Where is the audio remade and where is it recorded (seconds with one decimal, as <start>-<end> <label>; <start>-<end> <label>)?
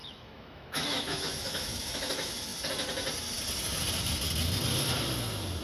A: 0.0-2.5 remade; 2.5-5.6 recorded